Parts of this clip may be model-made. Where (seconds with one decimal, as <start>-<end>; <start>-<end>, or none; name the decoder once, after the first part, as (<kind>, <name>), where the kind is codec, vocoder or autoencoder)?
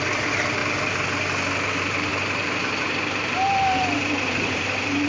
0.0-0.6 (vocoder, BigVGAN v2); 1.7-5.1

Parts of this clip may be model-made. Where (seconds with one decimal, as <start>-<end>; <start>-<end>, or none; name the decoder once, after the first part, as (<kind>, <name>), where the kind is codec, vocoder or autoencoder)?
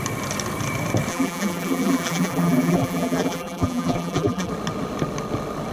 1.1-4.5 (vocoder, BigVGAN v2)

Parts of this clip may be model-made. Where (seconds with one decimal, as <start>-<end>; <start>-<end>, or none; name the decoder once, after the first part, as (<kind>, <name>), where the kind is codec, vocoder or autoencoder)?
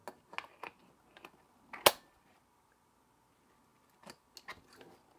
none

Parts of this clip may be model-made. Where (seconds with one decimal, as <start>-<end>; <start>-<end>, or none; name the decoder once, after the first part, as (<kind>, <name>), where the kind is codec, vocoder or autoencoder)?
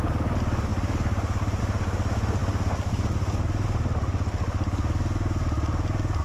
0.7-1.6 (vocoder, BigVGAN v2)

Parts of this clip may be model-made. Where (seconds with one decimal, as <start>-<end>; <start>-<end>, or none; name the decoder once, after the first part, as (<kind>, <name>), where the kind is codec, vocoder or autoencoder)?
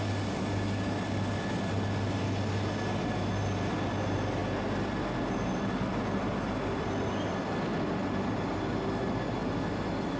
none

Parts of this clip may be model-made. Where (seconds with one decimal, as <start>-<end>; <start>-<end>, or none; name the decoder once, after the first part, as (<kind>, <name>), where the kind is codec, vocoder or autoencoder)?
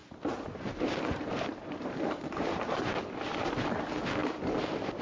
0.0-3.0 (vocoder, BigVGAN v2)